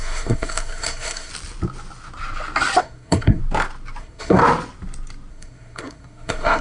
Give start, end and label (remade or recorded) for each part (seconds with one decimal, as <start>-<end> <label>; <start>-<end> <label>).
0.0-1.3 remade; 1.3-2.8 recorded; 2.8-3.4 remade; 3.4-4.0 recorded; 4.0-4.4 remade; 4.4-5.3 recorded; 5.3-6.6 remade